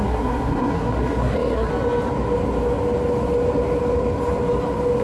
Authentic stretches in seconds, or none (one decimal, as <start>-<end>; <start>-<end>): 1.7-5.0